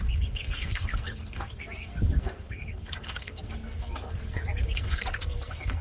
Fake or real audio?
fake